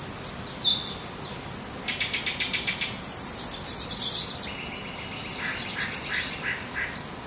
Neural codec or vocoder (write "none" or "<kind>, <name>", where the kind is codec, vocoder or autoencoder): none